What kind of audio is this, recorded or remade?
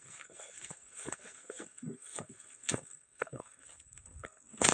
remade